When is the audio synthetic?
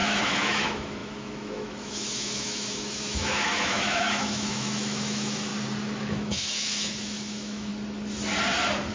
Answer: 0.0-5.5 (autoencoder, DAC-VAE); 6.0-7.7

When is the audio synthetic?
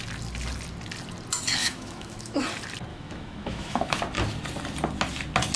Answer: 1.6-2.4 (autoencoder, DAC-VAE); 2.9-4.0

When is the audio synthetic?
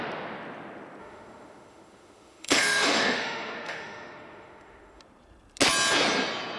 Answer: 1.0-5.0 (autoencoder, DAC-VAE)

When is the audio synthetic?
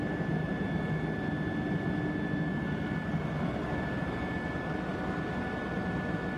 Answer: none